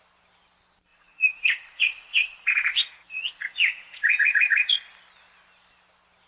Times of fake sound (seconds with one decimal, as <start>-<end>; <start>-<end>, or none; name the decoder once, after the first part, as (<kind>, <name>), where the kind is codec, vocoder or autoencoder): 0.9-4.7 (vocoder, Vocos)